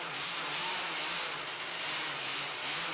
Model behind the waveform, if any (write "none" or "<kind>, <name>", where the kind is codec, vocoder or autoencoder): vocoder, BigVGAN v2